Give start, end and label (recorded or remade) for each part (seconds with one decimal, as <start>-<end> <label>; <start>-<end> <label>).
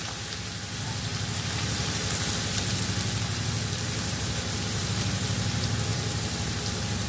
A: 0.0-5.9 recorded; 5.9-7.1 remade